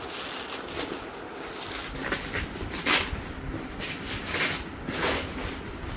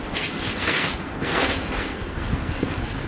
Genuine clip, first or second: first